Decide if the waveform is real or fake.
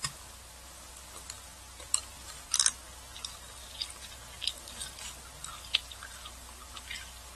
real